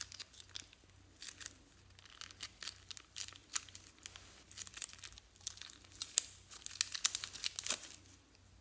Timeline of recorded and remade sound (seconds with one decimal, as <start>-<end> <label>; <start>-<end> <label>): 0.0-8.6 recorded